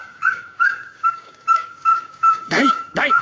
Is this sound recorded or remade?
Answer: remade